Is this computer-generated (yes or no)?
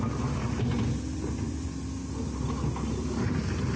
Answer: no